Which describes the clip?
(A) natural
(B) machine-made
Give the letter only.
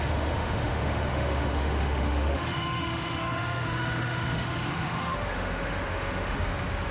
B